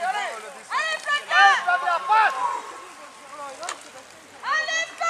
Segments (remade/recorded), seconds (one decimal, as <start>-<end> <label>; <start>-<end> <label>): 0.0-5.1 recorded